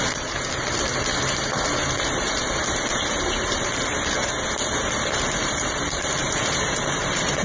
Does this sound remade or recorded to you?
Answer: remade